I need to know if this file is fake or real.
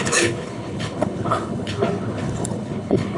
fake